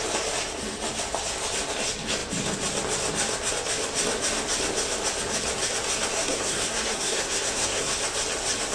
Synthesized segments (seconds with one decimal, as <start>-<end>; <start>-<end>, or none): 6.1-7.9